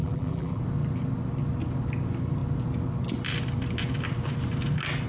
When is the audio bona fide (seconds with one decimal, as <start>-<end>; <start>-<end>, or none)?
0.6-5.1